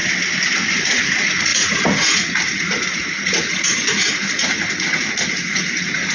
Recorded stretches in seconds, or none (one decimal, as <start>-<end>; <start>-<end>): 0.0-0.8